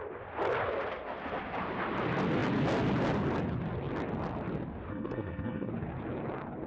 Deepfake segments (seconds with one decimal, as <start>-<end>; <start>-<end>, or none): 4.9-5.7